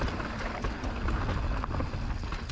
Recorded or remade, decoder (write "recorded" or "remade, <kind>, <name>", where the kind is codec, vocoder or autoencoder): recorded